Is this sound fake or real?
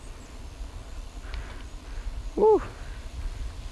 real